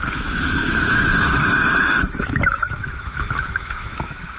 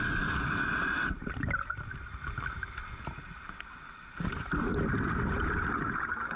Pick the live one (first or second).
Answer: second